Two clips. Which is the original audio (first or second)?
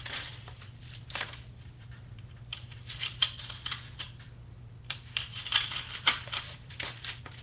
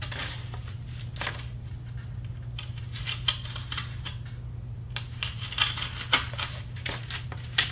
second